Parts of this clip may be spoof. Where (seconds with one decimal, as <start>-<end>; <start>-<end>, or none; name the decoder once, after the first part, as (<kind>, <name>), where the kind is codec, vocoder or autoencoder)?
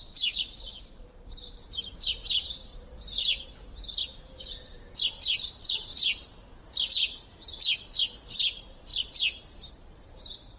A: 0.0-2.7 (vocoder, BigVGAN v2); 4.4-8.9; 9.7-10.6